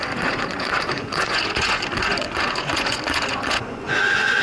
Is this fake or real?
fake